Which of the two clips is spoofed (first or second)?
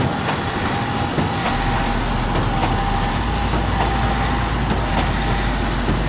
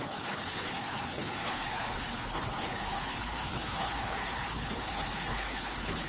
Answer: second